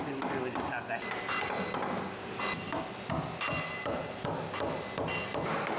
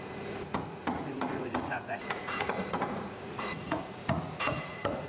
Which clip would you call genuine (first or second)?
first